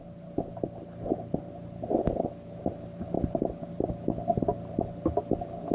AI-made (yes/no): no